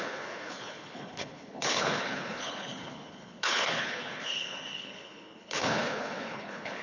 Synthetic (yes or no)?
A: yes